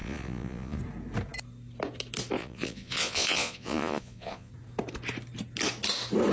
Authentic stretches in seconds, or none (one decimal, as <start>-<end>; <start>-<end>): 0.8-2.4; 4.5-6.3